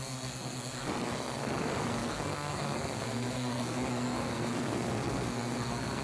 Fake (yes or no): yes